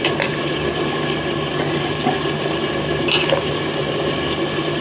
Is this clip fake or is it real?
real